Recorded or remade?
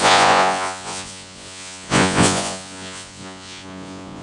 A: remade